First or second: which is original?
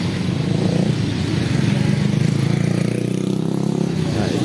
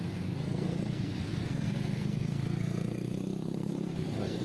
first